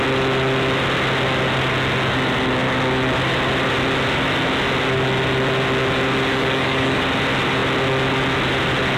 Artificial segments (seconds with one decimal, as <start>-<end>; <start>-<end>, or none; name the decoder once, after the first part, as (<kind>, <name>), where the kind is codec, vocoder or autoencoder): 6.3-7.0 (codec, DAC)